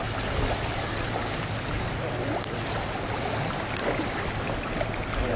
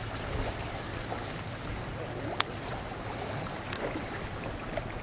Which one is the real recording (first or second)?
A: first